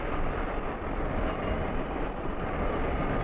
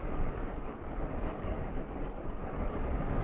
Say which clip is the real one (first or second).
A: first